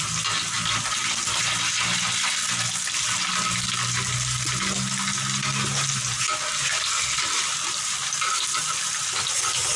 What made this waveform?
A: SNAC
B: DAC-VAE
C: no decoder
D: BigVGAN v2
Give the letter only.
C